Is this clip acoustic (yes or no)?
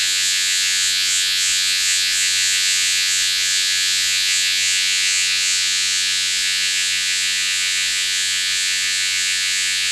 no